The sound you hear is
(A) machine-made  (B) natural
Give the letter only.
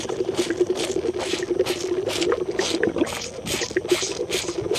B